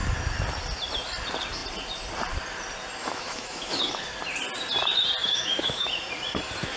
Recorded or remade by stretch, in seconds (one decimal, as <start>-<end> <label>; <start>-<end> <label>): 0.0-3.0 recorded; 3.0-3.9 remade; 3.9-5.2 recorded; 5.2-5.9 remade; 5.9-6.8 recorded

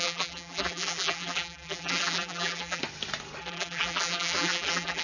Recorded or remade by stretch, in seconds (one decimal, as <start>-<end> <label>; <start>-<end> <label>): 0.0-2.8 remade; 2.8-3.4 recorded; 3.4-5.0 remade

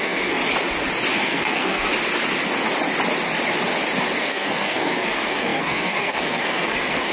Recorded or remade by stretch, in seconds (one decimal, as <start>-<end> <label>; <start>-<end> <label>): 0.0-0.4 remade; 0.4-1.1 recorded; 1.1-1.9 remade; 1.9-4.2 recorded; 4.2-7.1 remade

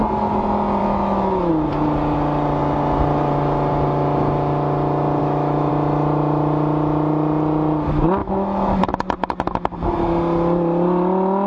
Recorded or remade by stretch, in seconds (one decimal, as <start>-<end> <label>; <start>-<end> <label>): 0.0-0.8 recorded; 0.8-1.5 remade; 1.5-5.2 recorded; 5.2-5.7 remade; 5.7-8.2 recorded; 8.2-8.8 remade; 8.8-11.5 recorded